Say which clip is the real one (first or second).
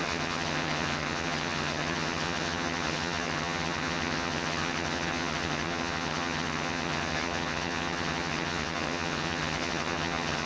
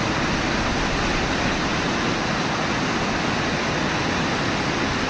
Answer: second